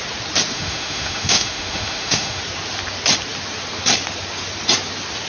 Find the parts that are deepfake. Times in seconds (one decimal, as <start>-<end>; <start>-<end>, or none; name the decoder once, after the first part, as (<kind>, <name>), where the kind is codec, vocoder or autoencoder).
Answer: 0.5-2.4 (autoencoder, DAC-VAE)